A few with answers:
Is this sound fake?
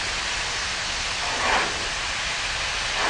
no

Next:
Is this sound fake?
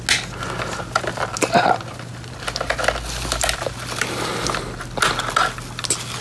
no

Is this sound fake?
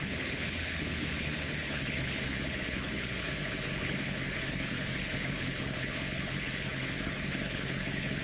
yes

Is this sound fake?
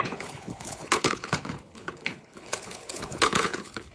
yes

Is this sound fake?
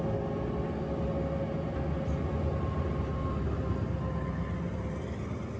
no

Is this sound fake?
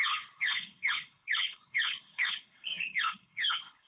yes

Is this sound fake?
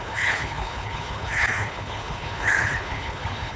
yes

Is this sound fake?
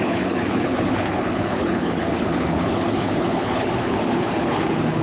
yes